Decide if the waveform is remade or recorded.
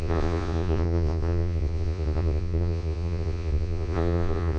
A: remade